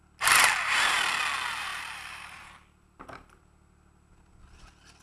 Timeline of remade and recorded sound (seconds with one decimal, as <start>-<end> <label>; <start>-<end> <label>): 0.0-1.7 recorded; 1.7-3.4 remade; 3.4-5.0 recorded